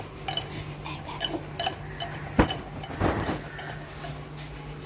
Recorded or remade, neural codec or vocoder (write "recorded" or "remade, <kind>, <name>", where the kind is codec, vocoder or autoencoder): recorded